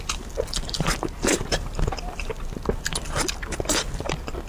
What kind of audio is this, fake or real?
real